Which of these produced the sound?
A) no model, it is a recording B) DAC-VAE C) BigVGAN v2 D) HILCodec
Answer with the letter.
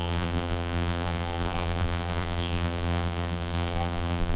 C